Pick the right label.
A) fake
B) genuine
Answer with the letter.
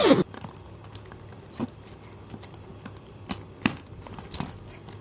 A